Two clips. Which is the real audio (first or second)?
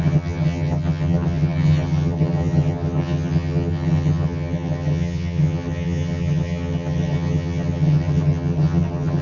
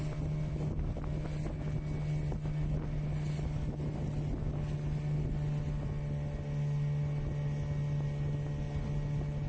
second